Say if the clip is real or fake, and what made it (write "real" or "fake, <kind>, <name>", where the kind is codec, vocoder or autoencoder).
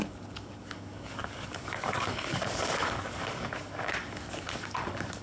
fake, codec, DAC